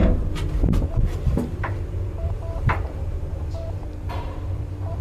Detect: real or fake fake